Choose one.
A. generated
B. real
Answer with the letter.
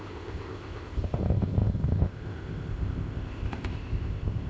A